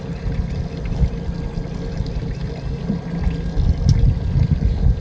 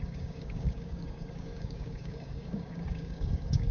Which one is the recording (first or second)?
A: first